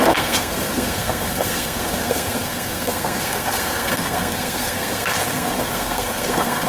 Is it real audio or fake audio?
fake